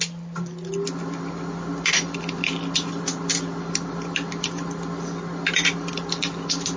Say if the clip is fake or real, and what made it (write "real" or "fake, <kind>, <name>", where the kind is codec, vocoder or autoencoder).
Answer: real